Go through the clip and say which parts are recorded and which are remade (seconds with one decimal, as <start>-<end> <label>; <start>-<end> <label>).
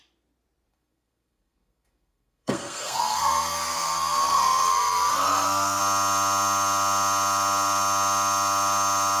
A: 0.0-0.7 recorded; 0.7-5.8 remade; 5.8-9.2 recorded